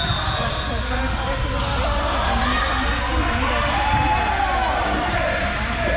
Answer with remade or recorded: recorded